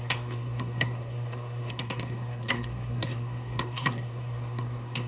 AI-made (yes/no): yes